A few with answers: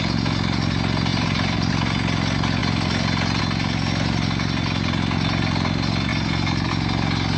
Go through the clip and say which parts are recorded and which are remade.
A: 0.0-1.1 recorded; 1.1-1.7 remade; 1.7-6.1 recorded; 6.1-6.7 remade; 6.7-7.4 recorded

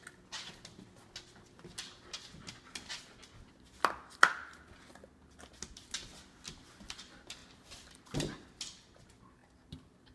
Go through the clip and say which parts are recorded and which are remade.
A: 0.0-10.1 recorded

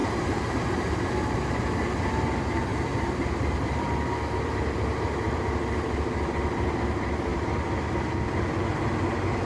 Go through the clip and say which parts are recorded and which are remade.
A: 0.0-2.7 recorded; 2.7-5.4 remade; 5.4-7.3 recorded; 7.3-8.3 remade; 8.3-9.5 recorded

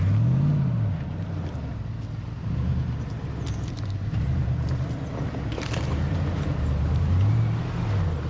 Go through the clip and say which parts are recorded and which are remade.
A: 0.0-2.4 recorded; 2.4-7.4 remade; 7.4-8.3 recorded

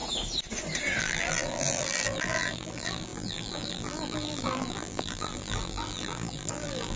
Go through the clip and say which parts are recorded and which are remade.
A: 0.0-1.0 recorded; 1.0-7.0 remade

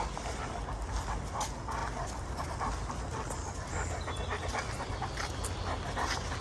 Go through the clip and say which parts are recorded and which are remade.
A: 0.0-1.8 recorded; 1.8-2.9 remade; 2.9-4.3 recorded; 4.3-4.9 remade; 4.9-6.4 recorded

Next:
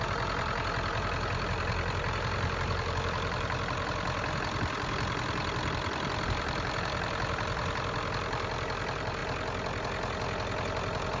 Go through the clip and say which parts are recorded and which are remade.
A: 0.0-9.2 remade; 9.2-11.2 recorded

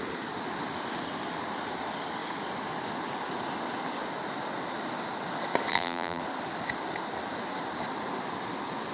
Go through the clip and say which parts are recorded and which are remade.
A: 0.0-5.7 recorded; 5.7-6.2 remade; 6.2-8.9 recorded